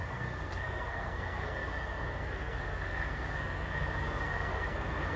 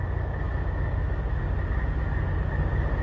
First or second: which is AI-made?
first